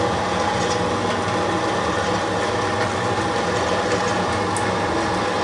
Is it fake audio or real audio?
real